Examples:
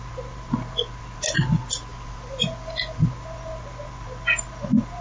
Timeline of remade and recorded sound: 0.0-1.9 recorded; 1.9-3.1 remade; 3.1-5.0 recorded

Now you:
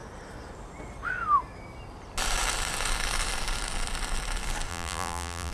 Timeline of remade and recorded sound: 0.0-4.7 recorded; 4.7-5.5 remade

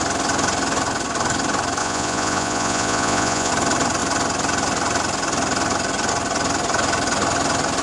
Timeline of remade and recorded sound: 0.0-1.8 recorded; 1.8-3.5 remade; 3.5-7.8 recorded

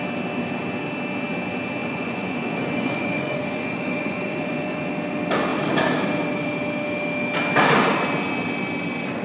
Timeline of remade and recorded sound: 0.0-1.8 recorded; 1.8-4.9 remade; 4.9-9.2 recorded

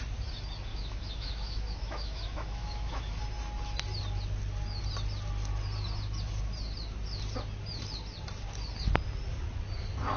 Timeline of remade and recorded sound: 0.0-0.7 recorded; 0.7-3.2 remade; 3.2-10.2 recorded

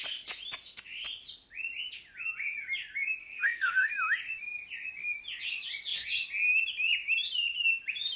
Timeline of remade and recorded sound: 0.0-3.2 recorded; 3.2-3.9 remade; 3.9-8.2 recorded

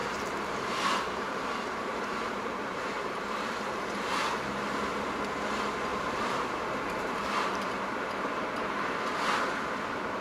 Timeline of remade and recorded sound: 0.0-3.7 remade; 3.7-5.9 recorded; 5.9-8.8 remade; 8.8-10.2 recorded

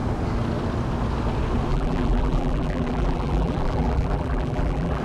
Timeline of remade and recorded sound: 0.0-1.7 recorded; 1.7-5.0 remade